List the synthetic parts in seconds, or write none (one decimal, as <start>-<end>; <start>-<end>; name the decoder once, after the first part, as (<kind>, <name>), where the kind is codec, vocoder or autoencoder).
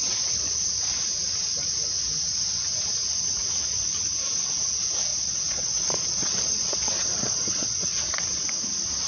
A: 5.1-8.0 (vocoder, Vocos)